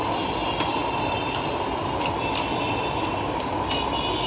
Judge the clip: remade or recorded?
recorded